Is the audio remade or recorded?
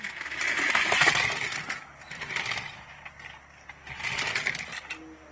recorded